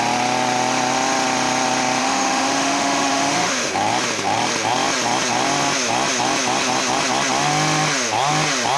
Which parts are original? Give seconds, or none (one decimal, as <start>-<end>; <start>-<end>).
0.0-2.0; 3.7-8.8